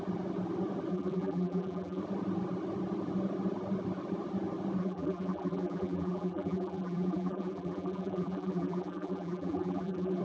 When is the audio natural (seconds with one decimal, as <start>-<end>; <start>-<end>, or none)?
0.0-0.9; 2.0-4.8